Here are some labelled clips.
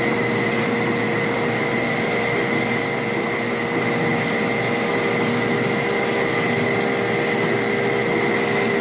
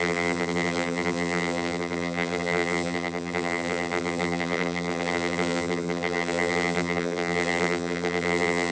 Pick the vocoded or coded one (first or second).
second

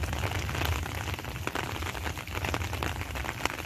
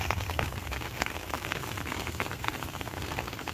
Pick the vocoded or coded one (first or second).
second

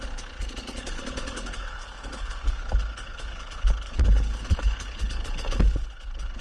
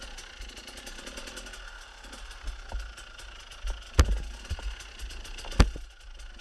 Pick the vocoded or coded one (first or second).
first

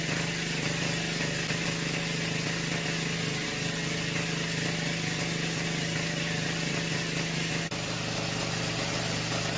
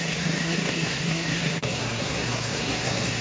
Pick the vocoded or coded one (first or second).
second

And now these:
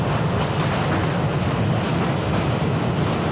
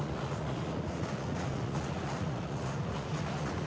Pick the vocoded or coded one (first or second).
second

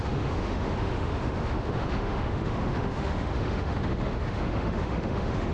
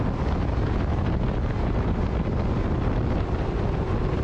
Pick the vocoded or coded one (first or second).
first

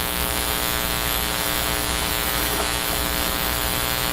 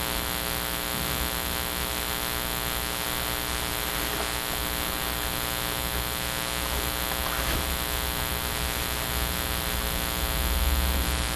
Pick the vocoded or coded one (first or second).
first